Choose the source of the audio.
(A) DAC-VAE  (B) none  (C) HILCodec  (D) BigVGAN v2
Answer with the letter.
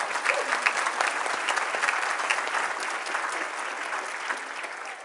B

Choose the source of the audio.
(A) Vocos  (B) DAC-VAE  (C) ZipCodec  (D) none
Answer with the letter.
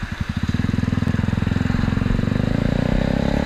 D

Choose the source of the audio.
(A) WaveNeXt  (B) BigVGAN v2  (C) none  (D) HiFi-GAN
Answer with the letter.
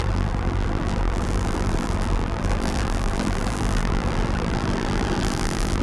B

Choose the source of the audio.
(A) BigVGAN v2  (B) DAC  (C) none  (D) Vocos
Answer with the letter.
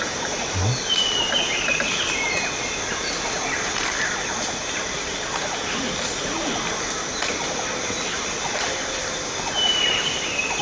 C